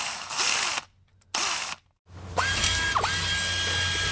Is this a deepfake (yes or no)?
no